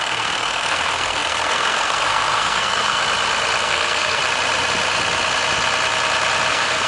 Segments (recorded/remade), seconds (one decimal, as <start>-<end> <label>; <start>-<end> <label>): 0.0-3.0 remade; 3.0-3.6 recorded; 3.6-4.2 remade; 4.2-6.5 recorded; 6.5-6.9 remade